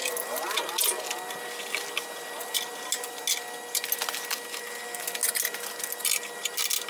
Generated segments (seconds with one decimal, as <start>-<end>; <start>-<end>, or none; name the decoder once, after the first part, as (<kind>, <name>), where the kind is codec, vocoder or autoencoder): none